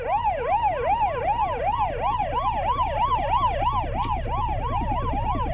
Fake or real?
real